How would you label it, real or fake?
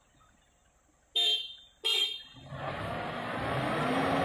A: real